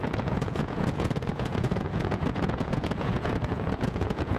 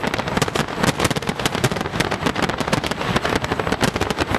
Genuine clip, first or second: second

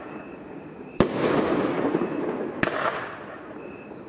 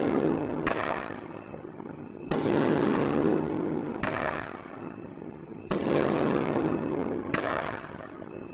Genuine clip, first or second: first